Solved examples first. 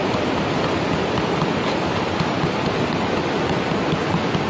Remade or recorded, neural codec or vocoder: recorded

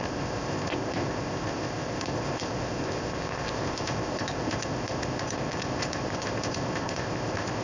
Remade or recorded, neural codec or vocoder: remade, codec, ZipCodec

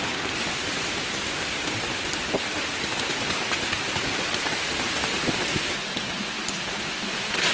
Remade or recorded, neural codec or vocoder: recorded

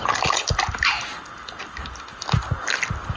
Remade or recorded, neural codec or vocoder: recorded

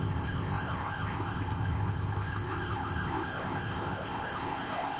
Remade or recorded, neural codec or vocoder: remade, codec, ZipCodec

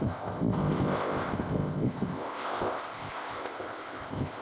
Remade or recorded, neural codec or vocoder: remade, codec, ZipCodec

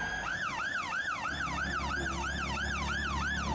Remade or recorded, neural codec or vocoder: recorded